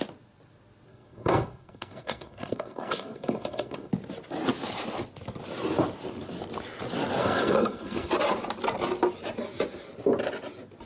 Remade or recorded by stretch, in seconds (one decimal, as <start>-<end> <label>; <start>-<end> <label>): 0.0-0.9 recorded; 0.9-3.9 remade; 3.9-7.2 recorded; 7.2-8.1 remade; 8.1-10.9 recorded